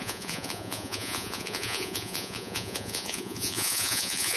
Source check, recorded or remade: remade